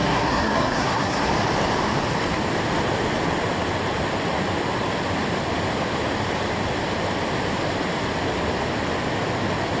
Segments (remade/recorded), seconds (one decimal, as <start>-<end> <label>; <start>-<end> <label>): 0.0-1.3 remade; 1.3-9.8 recorded